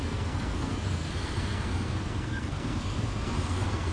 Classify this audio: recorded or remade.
remade